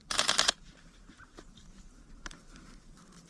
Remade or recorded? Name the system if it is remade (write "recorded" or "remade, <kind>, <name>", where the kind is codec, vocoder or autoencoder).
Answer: remade, vocoder, BigVGAN v2